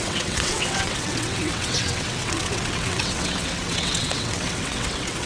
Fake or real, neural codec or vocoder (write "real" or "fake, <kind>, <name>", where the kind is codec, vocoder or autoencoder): fake, vocoder, WaveNeXt